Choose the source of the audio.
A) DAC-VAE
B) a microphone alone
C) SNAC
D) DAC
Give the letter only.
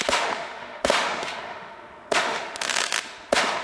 A